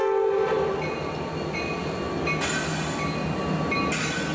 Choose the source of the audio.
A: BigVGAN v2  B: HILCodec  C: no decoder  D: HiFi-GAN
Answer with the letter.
C